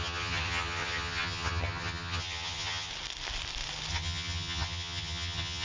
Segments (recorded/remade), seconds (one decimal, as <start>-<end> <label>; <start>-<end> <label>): 0.0-2.9 remade; 2.9-3.9 recorded; 3.9-5.6 remade